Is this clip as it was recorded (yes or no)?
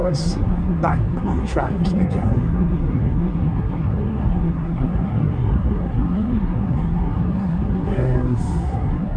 no